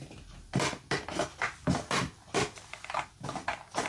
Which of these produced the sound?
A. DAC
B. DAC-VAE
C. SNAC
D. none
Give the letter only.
D